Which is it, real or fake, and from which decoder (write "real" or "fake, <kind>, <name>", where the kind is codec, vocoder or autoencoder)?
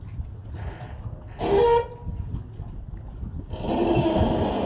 real